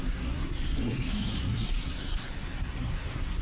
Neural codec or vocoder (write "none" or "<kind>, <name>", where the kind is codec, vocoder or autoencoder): codec, SNAC